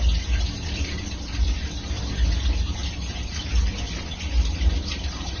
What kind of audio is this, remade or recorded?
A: recorded